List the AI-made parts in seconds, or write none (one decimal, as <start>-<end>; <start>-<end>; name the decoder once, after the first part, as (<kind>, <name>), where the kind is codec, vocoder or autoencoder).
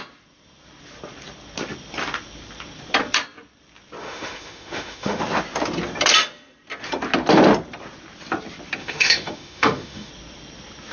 4.0-5.2 (autoencoder, DAC-VAE); 8.8-10.1